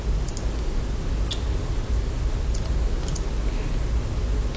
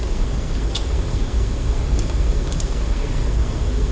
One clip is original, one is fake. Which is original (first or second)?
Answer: first